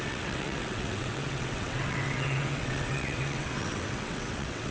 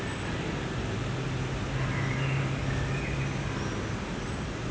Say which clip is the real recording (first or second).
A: second